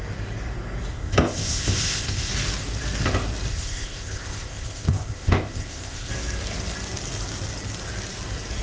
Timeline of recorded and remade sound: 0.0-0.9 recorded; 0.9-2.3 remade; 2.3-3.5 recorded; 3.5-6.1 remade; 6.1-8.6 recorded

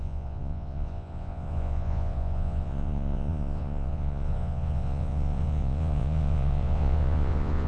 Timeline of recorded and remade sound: 0.0-7.7 remade

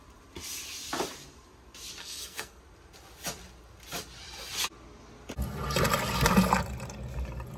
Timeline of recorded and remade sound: 0.0-2.0 recorded; 2.0-2.6 remade; 2.6-7.6 recorded

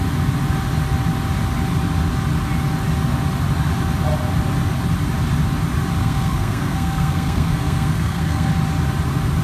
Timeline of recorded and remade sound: 0.0-6.0 recorded; 6.0-8.5 remade; 8.5-9.4 recorded

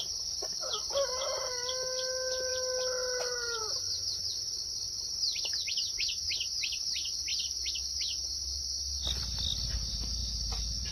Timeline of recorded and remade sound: 0.0-10.2 recorded; 10.2-10.9 remade

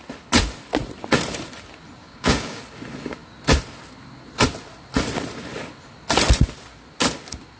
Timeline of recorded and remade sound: 0.0-2.0 recorded; 2.0-2.6 remade; 2.6-7.6 recorded

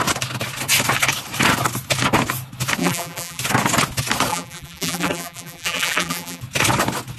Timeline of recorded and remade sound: 0.0-2.8 recorded; 2.8-3.4 remade; 3.4-4.3 recorded; 4.3-6.4 remade; 6.4-7.2 recorded